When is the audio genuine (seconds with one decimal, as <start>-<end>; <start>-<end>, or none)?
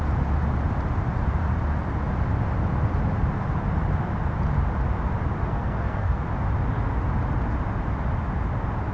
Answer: 0.0-5.5; 6.2-8.9